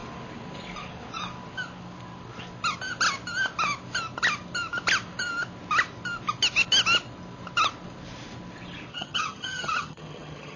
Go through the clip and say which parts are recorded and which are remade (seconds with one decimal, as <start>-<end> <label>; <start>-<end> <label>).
0.0-8.9 recorded; 8.9-10.6 remade